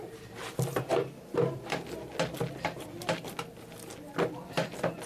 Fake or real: real